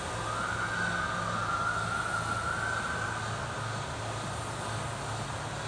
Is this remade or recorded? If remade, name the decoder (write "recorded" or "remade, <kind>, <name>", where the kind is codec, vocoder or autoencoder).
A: recorded